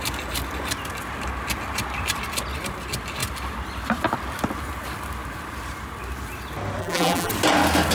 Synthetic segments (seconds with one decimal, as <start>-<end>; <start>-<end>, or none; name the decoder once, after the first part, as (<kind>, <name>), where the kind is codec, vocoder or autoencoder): 6.8-7.3 (vocoder, BigVGAN v2)